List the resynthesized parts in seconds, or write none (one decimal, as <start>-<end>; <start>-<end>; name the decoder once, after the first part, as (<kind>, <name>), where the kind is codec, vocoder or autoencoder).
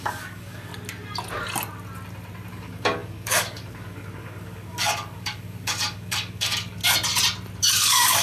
0.0-0.7 (codec, DAC); 2.5-6.8; 7.6-8.2